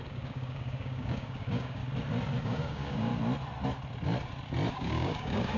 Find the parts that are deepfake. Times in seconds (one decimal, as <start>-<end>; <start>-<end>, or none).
0.0-1.8; 2.4-3.1; 4.7-5.6